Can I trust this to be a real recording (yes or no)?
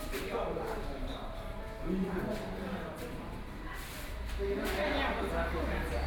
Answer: no